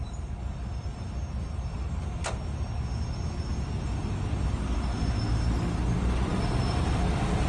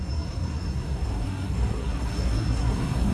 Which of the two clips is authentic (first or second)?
first